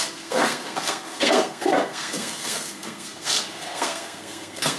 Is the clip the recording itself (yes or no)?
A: no